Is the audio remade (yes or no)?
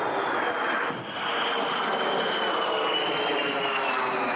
no